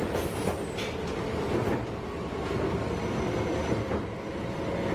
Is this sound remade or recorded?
recorded